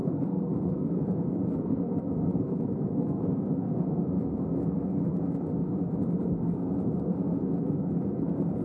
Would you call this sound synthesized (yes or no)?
yes